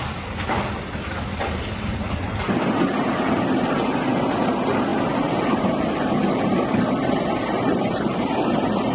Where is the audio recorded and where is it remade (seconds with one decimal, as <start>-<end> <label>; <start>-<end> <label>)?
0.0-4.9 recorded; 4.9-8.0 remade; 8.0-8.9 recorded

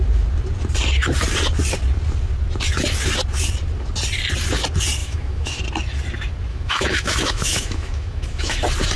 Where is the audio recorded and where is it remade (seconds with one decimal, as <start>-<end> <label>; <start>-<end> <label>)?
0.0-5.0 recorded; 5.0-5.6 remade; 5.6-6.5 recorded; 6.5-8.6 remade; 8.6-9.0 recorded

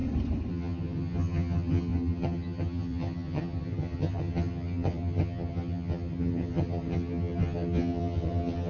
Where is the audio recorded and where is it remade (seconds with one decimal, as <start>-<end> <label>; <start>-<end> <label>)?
0.0-0.5 recorded; 0.5-8.7 remade

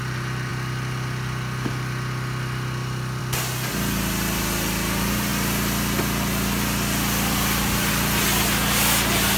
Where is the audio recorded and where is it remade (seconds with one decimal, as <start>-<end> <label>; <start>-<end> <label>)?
0.0-9.4 recorded

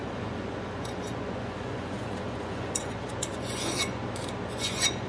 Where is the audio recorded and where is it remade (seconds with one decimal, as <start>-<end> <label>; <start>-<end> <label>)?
0.0-4.0 remade; 4.0-4.5 recorded; 4.5-5.1 remade